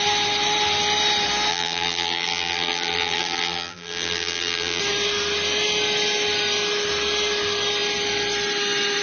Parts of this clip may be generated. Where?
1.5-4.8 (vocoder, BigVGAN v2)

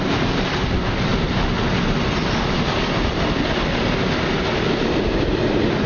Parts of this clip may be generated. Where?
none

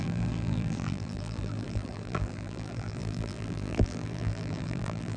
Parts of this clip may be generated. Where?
0.0-5.2 (vocoder, BigVGAN v2)